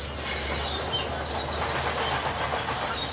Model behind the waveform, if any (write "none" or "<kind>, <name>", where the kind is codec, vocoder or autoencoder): none